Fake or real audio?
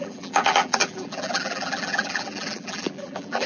fake